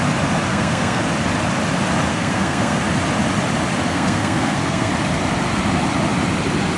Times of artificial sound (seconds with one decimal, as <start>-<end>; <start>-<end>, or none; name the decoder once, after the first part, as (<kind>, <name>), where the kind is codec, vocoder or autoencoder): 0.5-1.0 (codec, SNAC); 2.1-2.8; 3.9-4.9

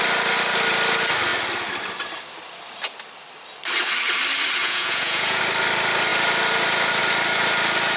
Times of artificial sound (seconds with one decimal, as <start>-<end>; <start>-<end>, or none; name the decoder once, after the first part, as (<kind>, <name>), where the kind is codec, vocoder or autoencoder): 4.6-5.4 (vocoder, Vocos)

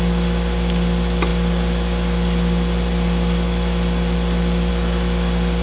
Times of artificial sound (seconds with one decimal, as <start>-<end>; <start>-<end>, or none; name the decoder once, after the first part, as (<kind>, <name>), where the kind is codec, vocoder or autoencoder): none

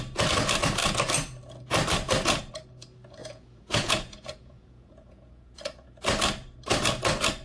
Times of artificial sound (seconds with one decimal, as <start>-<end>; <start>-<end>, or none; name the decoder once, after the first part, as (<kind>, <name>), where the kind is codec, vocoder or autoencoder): 3.2-6.0 (vocoder, Vocos)

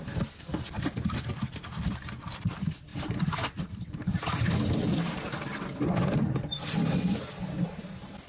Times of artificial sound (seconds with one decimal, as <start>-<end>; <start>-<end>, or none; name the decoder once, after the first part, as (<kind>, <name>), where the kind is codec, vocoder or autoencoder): none

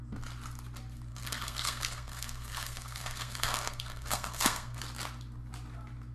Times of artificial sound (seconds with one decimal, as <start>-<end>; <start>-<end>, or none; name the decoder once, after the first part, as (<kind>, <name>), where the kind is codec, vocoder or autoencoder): 1.1-4.8 (codec, SNAC)

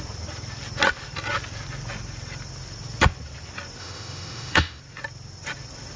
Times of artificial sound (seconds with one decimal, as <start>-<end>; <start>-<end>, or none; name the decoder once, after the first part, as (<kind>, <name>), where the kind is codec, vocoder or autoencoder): 3.8-4.8 (autoencoder, DAC-VAE)

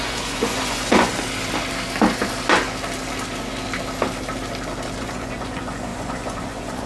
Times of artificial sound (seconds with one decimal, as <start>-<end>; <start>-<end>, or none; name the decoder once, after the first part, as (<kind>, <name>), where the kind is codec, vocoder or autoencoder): 0.0-1.1 (vocoder, Vocos); 5.0-6.9